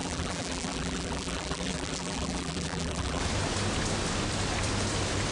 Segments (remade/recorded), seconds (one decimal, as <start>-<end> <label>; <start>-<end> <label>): 0.0-3.2 remade; 3.2-5.3 recorded